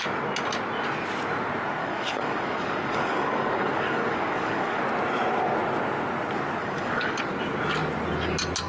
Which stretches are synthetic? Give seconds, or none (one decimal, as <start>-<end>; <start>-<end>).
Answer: 1.8-4.8; 6.6-7.2